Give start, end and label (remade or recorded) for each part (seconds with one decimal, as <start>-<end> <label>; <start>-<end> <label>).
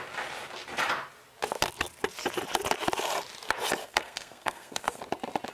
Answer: 0.0-3.8 recorded; 3.8-5.0 remade; 5.0-5.5 recorded